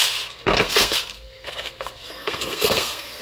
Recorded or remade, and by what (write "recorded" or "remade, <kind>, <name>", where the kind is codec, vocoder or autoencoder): remade, codec, SNAC